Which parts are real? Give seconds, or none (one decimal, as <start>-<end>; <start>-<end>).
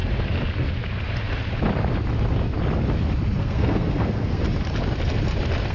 0.0-3.4; 4.4-5.7